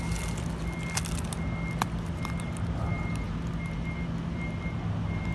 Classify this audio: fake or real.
real